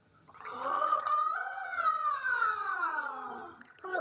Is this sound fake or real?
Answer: fake